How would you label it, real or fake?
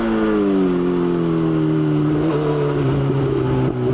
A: real